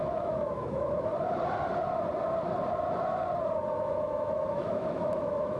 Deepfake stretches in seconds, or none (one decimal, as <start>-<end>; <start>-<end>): 0.0-1.1; 3.7-5.6